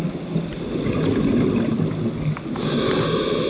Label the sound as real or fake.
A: real